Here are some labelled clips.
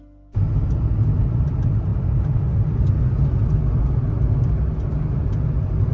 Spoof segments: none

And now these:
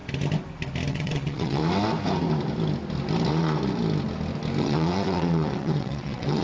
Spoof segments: 0.9-1.6 (vocoder, WaveNeXt); 4.6-6.4

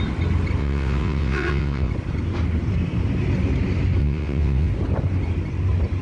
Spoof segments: 0.6-1.9 (vocoder, WaveNeXt); 4.0-4.7

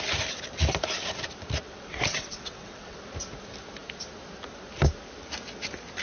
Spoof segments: 1.7-3.0 (vocoder, WaveNeXt)

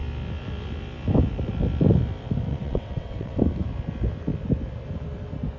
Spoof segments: 2.5-3.4 (vocoder, WaveNeXt)

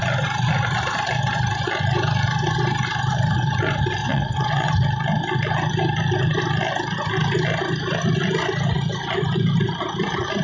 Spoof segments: 4.0-4.7 (vocoder, WaveNeXt)

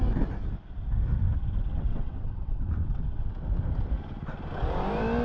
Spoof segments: 1.9-3.3 (vocoder, WaveNeXt)

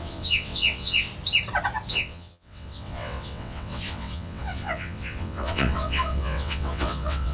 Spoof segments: 0.0-1.1 (vocoder, WaveNeXt); 1.9-7.3